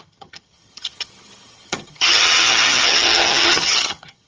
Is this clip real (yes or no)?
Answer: no